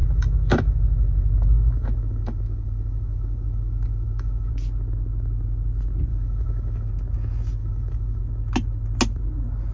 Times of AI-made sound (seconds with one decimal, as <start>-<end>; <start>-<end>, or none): 0.0-4.5; 6.1-6.9; 7.6-8.2